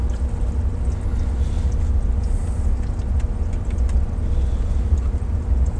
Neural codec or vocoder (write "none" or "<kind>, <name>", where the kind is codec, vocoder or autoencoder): none